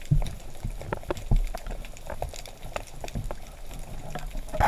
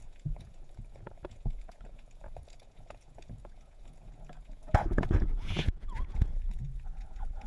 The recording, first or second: first